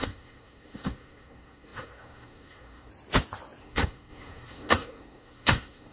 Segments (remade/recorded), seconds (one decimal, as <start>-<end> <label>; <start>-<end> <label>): 0.0-2.9 remade; 2.9-3.6 recorded; 3.6-5.9 remade